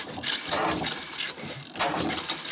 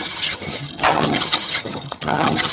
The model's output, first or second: second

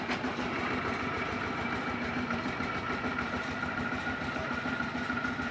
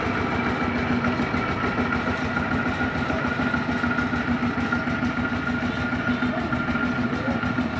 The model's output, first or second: first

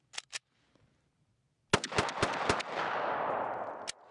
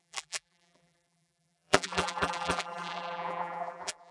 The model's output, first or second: second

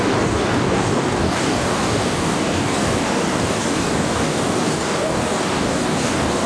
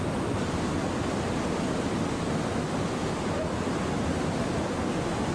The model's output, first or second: first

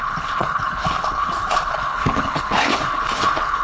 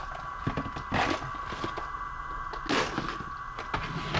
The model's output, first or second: first